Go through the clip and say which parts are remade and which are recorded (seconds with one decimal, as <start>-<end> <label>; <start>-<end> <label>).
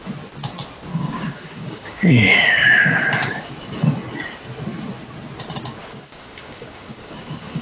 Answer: 0.0-0.9 recorded; 0.9-3.5 remade; 3.5-5.8 recorded; 5.8-7.6 remade